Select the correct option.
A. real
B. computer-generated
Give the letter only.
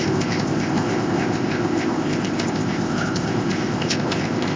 B